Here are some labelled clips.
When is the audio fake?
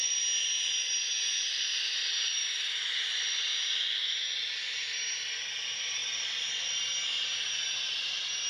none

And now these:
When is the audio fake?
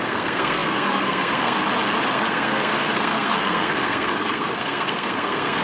0.0-1.6 (codec, SNAC); 2.1-5.6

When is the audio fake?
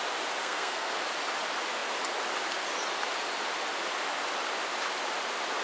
0.4-0.9 (codec, SNAC)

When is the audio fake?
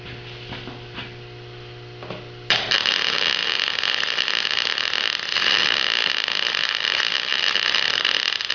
none